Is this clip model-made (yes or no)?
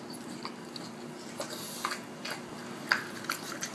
no